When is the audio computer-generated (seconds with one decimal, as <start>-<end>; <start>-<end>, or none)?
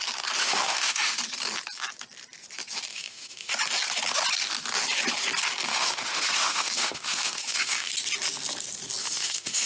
0.4-1.2; 2.9-3.5; 5.7-7.9; 9.0-9.7